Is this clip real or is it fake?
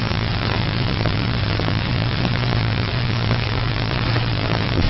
fake